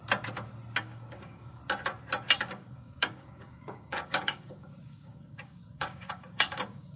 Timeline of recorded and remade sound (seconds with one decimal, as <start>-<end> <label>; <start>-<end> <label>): 0.0-0.8 recorded; 0.8-1.6 remade; 1.6-2.4 recorded; 2.4-7.0 remade